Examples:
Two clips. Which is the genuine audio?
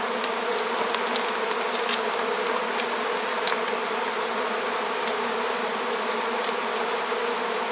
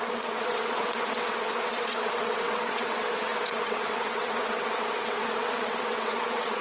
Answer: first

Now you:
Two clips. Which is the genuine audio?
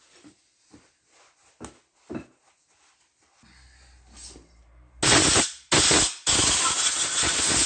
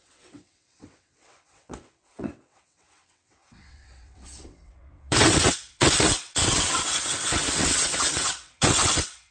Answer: first